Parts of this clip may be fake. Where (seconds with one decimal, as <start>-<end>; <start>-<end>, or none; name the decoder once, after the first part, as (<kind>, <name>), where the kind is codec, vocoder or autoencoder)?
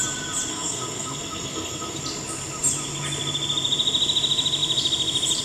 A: 0.5-2.0 (codec, SNAC)